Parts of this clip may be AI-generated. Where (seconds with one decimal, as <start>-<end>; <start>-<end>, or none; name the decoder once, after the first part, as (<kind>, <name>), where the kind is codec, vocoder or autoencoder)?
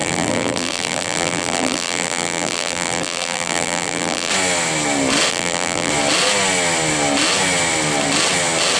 0.0-4.3 (vocoder, BigVGAN v2); 5.3-5.9